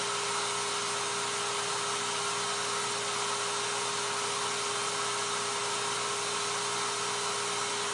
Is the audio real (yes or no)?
yes